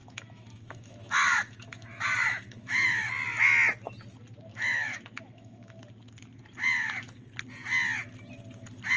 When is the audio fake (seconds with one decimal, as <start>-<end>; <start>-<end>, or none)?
0.0-3.1; 4.5-5.8